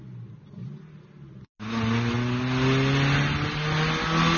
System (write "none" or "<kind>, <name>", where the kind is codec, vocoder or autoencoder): none